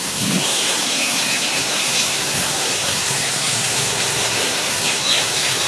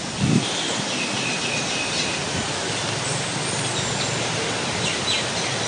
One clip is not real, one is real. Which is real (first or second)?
second